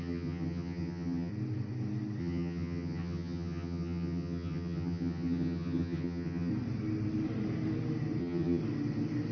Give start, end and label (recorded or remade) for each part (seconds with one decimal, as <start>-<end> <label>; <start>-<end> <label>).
0.0-1.3 remade; 1.3-2.2 recorded; 2.2-6.5 remade; 6.5-8.2 recorded; 8.2-8.6 remade; 8.6-9.3 recorded